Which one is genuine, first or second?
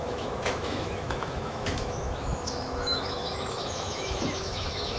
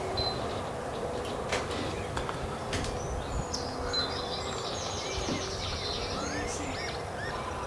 second